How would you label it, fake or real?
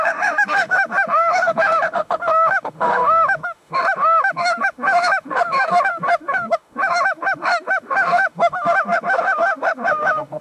fake